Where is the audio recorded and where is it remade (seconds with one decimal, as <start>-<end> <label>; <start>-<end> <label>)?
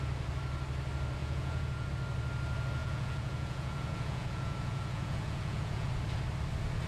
0.0-1.2 recorded; 1.2-1.9 remade; 1.9-2.8 recorded; 2.8-5.9 remade; 5.9-6.9 recorded